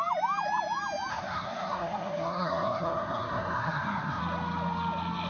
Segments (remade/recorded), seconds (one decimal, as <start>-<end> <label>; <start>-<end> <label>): 0.0-1.1 recorded; 1.1-4.2 remade; 4.2-5.3 recorded